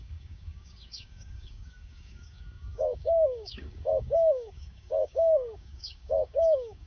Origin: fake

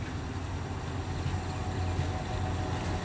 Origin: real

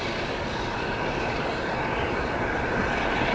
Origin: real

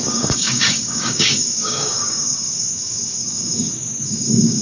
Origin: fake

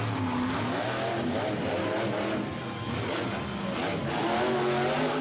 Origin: real